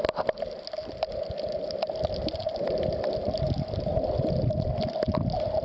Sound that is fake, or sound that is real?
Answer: real